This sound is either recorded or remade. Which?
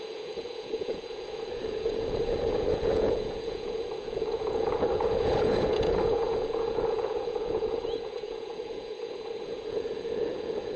remade